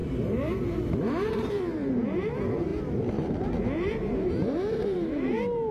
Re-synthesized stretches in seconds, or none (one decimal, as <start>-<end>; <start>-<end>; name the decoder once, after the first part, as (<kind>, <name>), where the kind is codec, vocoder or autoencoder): 0.0-5.7 (vocoder, BigVGAN v2)